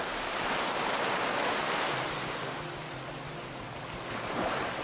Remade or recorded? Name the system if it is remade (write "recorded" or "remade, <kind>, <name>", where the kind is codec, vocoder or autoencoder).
recorded